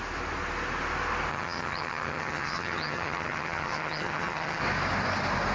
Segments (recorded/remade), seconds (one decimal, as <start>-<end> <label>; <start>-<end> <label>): 0.0-1.3 recorded; 1.3-4.6 remade; 4.6-5.5 recorded